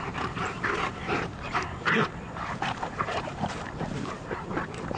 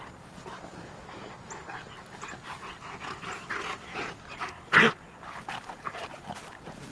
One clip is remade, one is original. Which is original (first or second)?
second